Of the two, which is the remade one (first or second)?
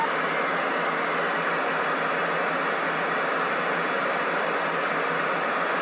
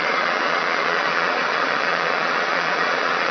second